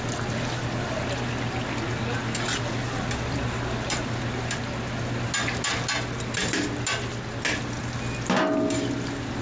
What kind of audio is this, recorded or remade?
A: recorded